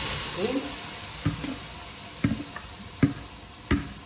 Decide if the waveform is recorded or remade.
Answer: recorded